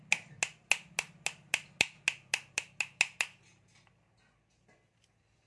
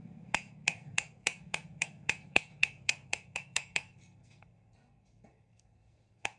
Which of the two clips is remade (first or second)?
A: second